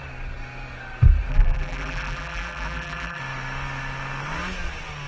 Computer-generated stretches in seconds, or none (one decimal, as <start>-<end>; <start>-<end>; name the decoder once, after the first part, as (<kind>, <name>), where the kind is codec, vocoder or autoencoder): 1.3-3.2 (vocoder, BigVGAN v2)